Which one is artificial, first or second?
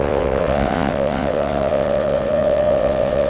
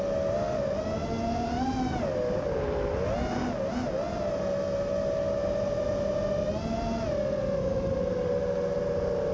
first